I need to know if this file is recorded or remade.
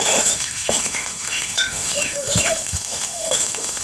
remade